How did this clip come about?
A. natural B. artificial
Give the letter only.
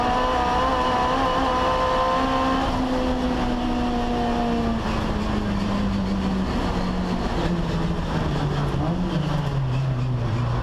A